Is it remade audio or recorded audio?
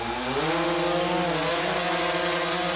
recorded